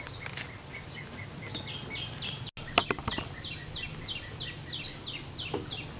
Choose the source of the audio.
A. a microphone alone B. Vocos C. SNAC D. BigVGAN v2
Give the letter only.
A